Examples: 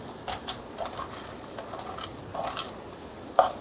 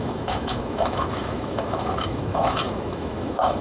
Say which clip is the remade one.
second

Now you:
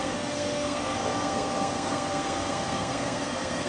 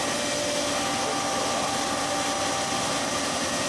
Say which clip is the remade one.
first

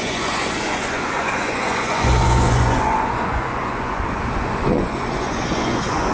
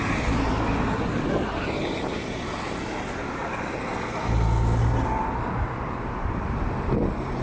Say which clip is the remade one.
first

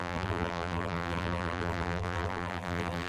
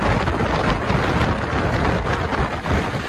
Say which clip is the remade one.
first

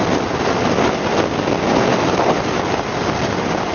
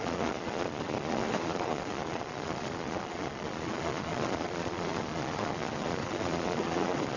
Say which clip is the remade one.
second